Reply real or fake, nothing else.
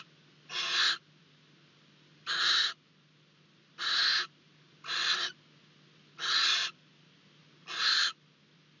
real